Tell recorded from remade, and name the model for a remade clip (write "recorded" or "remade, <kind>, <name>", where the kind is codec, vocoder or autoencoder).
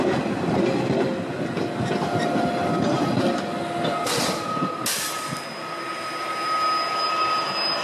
recorded